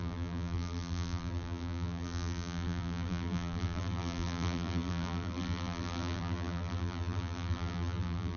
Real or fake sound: fake